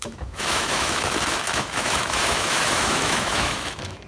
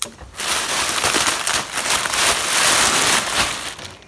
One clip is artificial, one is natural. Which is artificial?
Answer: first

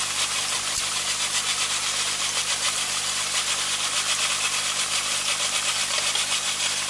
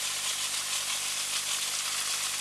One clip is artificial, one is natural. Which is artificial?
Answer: first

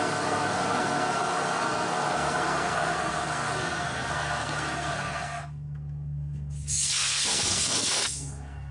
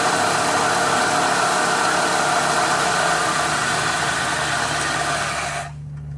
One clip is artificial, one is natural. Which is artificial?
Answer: first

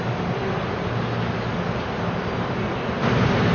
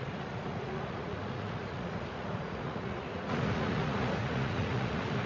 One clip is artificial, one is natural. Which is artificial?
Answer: second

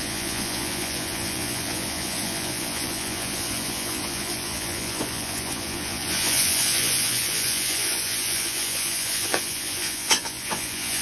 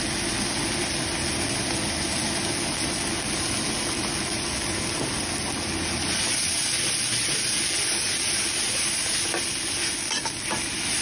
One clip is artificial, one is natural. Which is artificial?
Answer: first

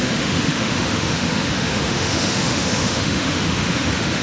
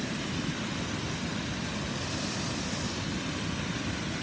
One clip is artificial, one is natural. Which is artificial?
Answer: first